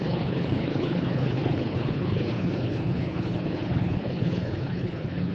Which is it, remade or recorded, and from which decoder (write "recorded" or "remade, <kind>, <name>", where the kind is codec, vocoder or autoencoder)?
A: remade, codec, HILCodec